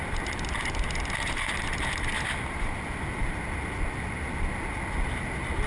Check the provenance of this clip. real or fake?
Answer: real